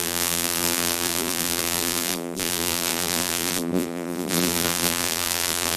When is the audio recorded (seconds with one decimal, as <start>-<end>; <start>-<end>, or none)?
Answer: none